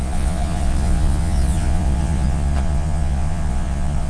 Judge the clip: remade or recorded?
remade